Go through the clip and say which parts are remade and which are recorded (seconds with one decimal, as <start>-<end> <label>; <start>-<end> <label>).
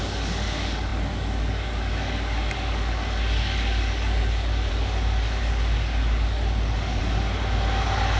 0.0-7.0 remade; 7.0-8.2 recorded